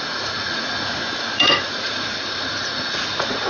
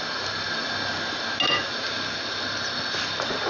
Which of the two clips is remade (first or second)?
first